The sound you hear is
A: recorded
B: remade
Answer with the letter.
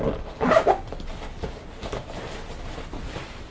A